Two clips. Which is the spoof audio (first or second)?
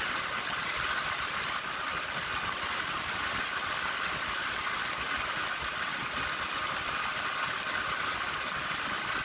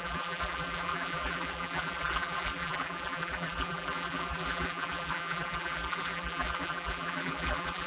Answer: second